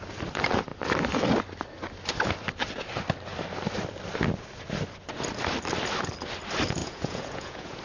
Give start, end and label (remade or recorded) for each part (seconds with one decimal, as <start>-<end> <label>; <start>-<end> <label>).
0.0-6.8 recorded; 6.8-7.8 remade